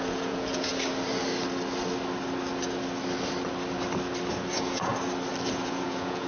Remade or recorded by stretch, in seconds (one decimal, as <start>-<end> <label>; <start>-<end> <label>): 0.0-0.7 remade; 0.7-4.5 recorded; 4.5-4.9 remade; 4.9-5.5 recorded; 5.5-6.3 remade